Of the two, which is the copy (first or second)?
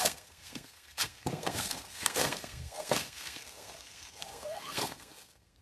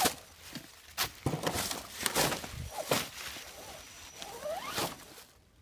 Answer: first